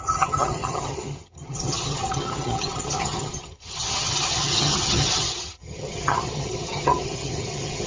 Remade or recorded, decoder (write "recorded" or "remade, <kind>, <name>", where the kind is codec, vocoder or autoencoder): remade, vocoder, HiFi-GAN